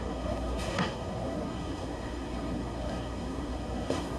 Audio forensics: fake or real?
fake